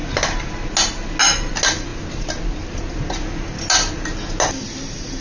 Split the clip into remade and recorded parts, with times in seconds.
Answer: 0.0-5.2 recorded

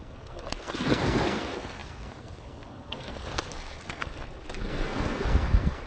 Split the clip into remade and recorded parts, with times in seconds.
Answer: 0.0-5.9 remade

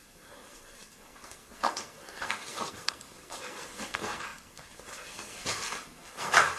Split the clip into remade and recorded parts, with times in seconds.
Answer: 0.0-6.6 remade

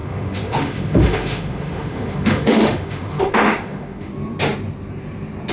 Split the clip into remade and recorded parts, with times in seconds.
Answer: 0.0-4.1 remade; 4.1-5.5 recorded